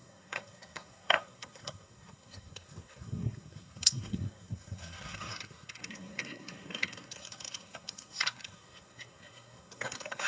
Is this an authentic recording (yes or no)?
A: no